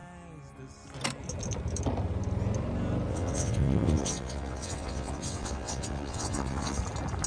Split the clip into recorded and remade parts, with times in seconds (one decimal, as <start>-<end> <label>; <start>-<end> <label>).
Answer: 0.0-3.1 recorded; 3.1-6.8 remade; 6.8-7.3 recorded